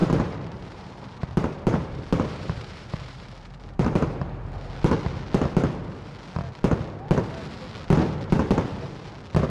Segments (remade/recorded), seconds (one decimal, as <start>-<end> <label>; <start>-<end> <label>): 0.0-4.7 remade; 4.7-9.5 recorded